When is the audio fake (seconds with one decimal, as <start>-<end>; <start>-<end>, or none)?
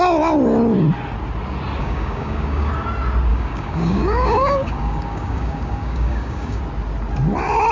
1.8-2.7; 3.3-6.6